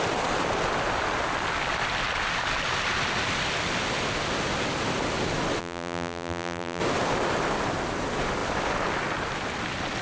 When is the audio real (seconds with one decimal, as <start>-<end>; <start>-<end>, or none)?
0.0-5.6; 6.8-10.0